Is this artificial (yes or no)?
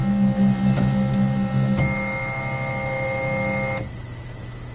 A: no